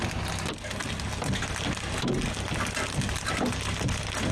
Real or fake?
real